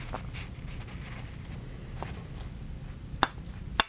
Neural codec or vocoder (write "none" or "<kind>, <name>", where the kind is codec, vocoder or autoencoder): none